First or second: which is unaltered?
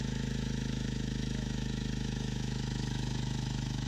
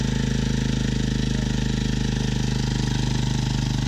second